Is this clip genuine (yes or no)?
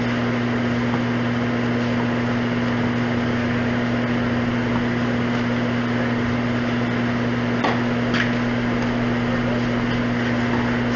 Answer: yes